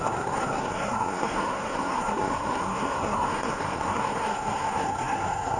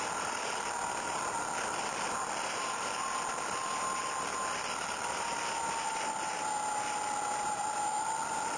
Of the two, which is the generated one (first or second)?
first